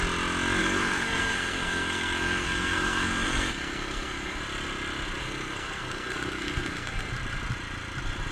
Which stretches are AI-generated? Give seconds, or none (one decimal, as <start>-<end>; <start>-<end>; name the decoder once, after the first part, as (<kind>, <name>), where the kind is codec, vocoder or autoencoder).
0.6-4.4 (codec, SNAC); 5.2-7.1